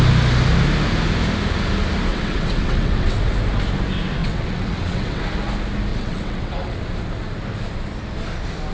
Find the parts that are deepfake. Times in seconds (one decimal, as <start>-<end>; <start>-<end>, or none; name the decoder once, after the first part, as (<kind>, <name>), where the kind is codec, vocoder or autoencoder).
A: 2.1-3.3 (vocoder, WaveNeXt); 4.2-5.2; 5.9-6.8